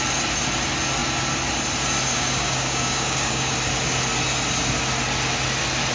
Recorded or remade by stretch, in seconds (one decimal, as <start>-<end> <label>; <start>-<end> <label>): 0.0-2.1 recorded; 2.1-3.5 remade; 3.5-5.9 recorded